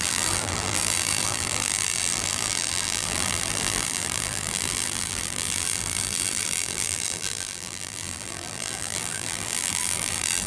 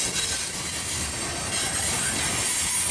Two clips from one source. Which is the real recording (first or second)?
second